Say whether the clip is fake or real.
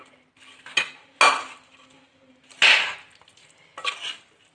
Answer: real